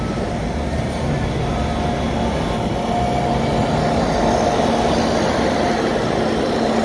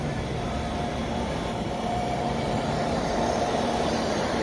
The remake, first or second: second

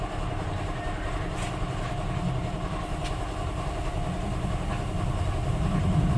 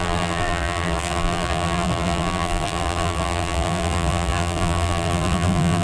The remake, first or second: second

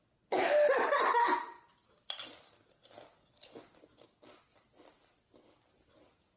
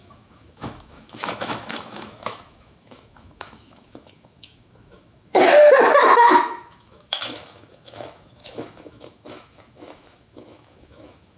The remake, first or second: second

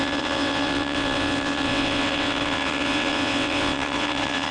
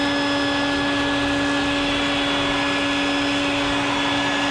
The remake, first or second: first